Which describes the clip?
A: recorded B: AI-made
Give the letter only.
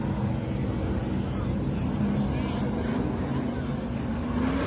A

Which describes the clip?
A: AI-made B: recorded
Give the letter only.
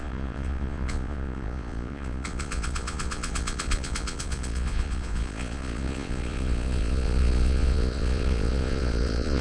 A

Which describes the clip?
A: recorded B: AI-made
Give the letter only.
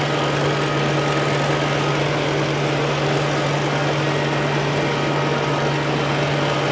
A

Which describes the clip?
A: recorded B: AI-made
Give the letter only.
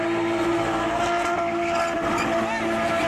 A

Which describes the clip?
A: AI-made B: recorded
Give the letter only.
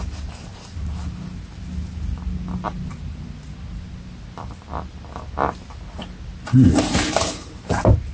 B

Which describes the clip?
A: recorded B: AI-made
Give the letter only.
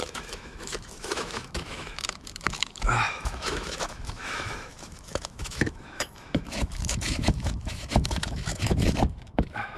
B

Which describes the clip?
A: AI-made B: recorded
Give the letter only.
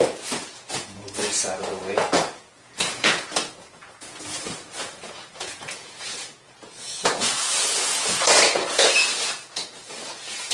A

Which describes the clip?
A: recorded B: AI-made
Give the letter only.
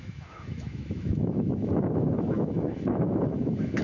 B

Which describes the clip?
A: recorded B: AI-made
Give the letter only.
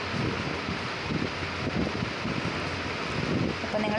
A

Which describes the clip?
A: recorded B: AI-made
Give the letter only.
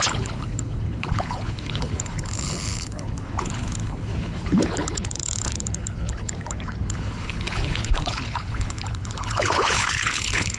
B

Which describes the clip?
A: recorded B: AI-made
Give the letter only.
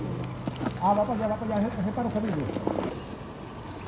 A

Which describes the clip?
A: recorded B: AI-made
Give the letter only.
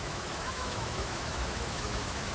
B